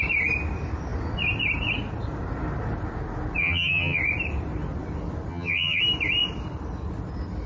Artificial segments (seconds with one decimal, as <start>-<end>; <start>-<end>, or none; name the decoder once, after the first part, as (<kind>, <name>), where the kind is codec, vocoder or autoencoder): 3.4-4.0 (vocoder, HiFi-GAN); 5.3-5.8